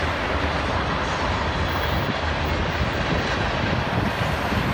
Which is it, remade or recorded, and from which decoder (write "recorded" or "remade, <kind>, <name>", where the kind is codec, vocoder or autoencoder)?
recorded